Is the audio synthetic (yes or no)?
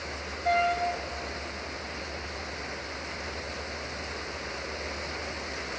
no